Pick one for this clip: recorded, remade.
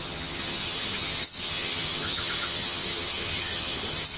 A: remade